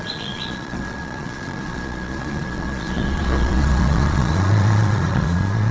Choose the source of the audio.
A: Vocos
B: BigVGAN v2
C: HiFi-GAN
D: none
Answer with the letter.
A